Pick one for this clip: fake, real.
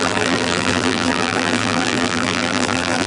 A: fake